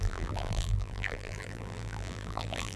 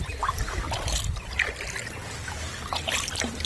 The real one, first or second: second